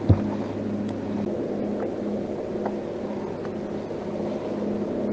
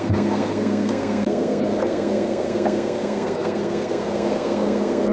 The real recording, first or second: first